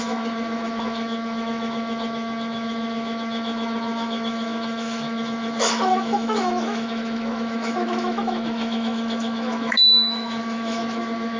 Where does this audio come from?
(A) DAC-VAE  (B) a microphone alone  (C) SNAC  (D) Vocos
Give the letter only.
A